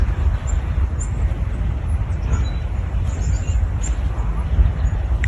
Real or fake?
real